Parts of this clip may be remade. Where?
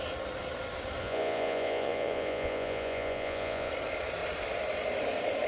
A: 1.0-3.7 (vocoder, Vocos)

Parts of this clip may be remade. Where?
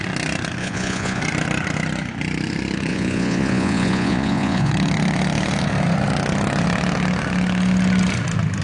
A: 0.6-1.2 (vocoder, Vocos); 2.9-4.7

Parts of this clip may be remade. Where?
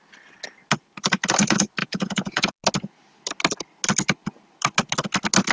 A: 1.8-2.5 (vocoder, Vocos)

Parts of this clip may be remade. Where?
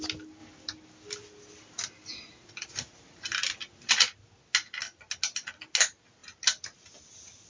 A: none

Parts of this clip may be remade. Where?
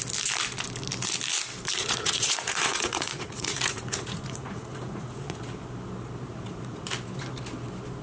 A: 1.8-5.4 (vocoder, Vocos); 6.3-6.8